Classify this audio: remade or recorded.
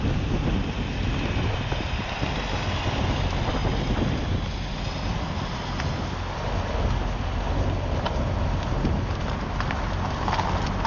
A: recorded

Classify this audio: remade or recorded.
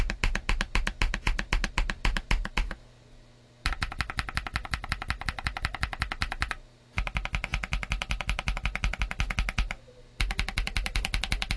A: recorded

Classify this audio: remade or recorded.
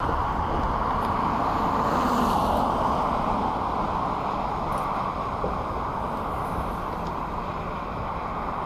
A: recorded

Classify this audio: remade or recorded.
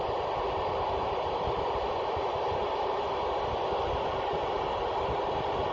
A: recorded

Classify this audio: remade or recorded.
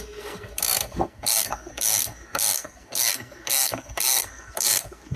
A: remade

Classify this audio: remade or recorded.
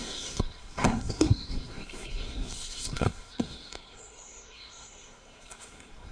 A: remade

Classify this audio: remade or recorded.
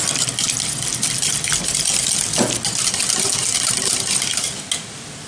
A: recorded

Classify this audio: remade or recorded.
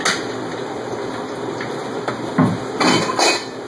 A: recorded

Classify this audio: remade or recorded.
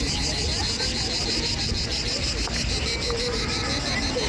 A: recorded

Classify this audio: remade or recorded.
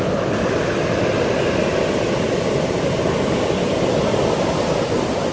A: recorded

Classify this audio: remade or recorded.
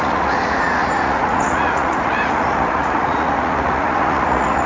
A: remade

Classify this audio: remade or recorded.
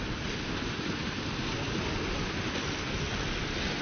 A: recorded